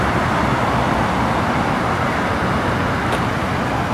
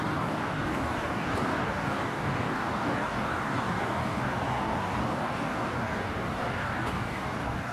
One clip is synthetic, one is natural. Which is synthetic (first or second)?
second